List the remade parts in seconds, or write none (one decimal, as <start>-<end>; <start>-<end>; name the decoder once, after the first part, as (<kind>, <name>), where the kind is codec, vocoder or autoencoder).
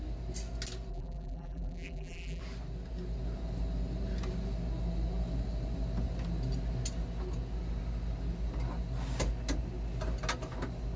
0.9-2.4 (vocoder, BigVGAN v2)